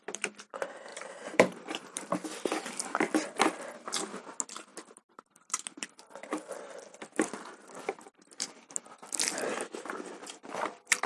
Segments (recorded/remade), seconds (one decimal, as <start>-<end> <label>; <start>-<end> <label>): 0.0-0.9 recorded; 0.9-2.1 remade; 2.1-11.1 recorded